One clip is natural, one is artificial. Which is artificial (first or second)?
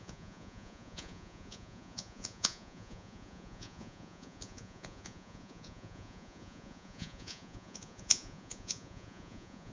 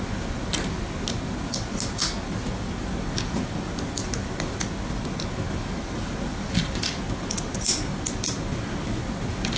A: first